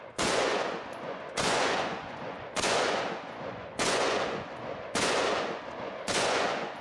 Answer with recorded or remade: remade